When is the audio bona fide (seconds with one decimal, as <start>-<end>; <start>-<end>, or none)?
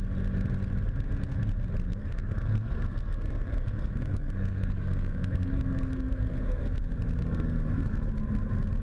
0.0-1.9; 6.8-7.2; 8.1-8.8